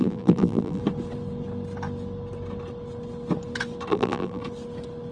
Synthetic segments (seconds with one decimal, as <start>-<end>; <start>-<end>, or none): 0.0-0.8; 3.9-4.4